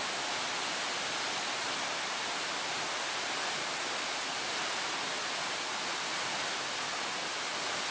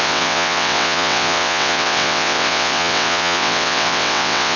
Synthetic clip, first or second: second